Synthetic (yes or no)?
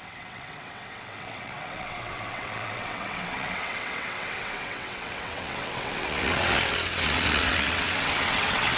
yes